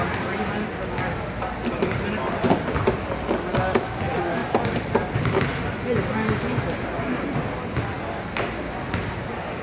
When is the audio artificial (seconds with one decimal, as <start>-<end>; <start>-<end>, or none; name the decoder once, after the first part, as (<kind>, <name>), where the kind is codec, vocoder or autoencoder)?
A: none